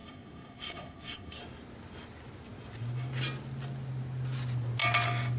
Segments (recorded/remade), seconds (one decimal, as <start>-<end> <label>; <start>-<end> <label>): 0.0-1.4 remade; 1.4-5.4 recorded